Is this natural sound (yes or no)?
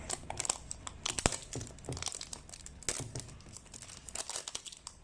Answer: yes